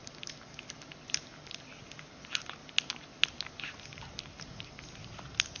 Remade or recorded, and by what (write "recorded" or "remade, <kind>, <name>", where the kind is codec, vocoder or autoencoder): recorded